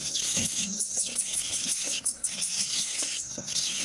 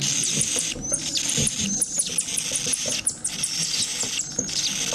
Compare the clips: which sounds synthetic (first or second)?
first